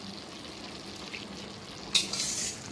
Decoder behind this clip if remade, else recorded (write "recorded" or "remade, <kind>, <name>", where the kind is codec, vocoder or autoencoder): recorded